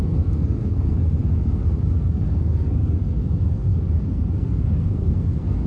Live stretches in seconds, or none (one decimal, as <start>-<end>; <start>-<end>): none